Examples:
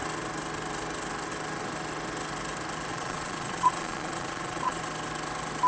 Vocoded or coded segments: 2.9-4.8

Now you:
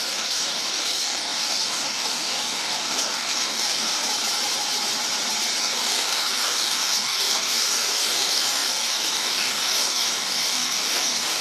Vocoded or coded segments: 0.0-4.0; 5.6-11.4

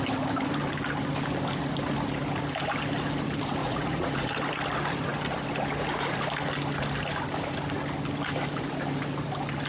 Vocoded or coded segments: 3.6-4.3

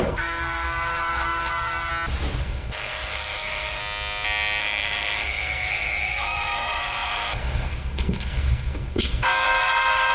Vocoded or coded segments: 0.0-1.9; 2.4-3.8; 4.6-10.1

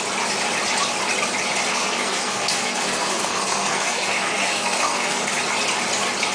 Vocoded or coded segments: 1.7-5.2

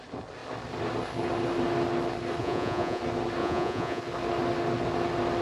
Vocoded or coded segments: 2.4-3.0; 3.4-4.0

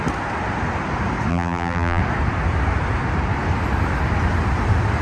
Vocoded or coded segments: 1.3-2.0

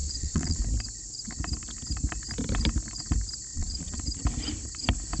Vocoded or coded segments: 0.0-0.6; 3.5-4.0